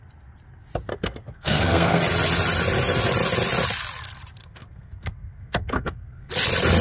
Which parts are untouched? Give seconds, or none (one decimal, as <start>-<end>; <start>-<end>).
0.0-0.9; 2.0-4.4; 6.3-6.8